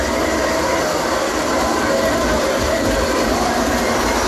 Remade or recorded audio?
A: recorded